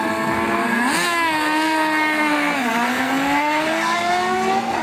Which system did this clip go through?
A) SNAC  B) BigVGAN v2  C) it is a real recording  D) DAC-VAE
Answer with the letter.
A